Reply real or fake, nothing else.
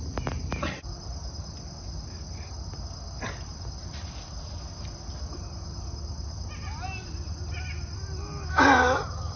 real